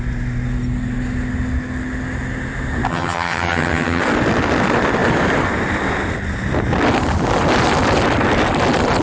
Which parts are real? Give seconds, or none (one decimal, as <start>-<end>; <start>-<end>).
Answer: 0.0-2.9; 4.0-9.0